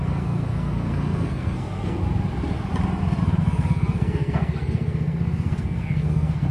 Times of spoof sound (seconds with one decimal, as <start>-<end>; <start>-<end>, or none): 0.0-2.0; 3.4-6.5